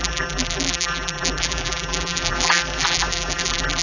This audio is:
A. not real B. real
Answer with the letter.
A